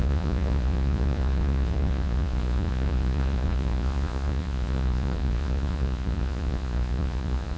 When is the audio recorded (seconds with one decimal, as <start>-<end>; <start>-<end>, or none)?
none